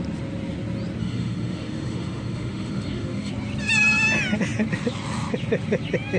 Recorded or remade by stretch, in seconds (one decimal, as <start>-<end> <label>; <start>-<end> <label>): 0.0-1.0 recorded; 1.0-3.3 remade; 3.3-6.2 recorded